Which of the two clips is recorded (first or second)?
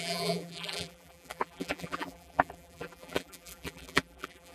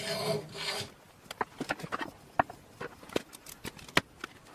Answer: second